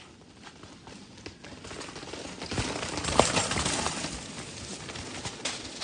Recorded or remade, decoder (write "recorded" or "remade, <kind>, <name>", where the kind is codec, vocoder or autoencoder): recorded